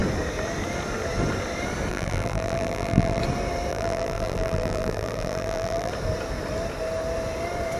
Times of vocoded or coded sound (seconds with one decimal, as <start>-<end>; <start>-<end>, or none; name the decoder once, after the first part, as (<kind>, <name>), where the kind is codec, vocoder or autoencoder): 1.9-3.2 (vocoder, BigVGAN v2); 3.7-5.9